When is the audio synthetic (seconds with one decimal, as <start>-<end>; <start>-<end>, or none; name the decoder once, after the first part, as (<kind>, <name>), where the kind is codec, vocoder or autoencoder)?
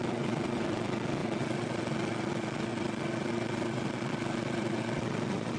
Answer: 0.0-5.6 (vocoder, Vocos)